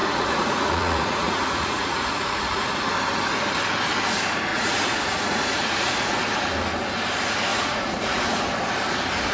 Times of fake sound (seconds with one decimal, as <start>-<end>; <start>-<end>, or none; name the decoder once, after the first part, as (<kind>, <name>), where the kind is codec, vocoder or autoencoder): 0.0-2.9 (vocoder, Vocos); 4.5-6.2; 7.5-8.4